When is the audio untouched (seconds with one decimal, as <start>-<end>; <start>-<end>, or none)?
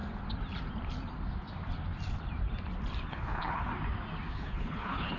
0.0-3.1; 3.7-4.3